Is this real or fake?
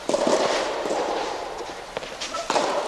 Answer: real